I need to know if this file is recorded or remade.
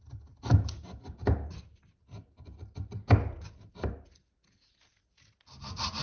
recorded